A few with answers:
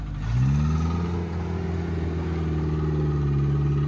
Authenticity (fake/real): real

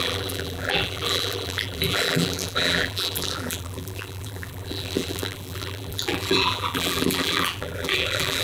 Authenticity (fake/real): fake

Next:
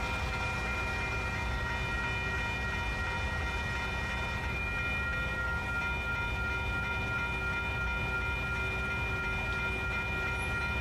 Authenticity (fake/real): real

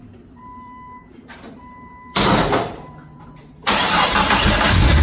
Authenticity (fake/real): fake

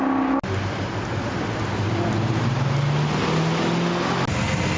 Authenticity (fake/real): real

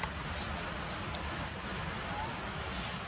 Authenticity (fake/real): real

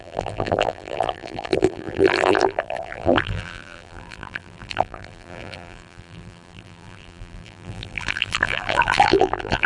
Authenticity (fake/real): fake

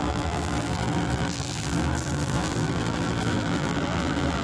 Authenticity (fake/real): fake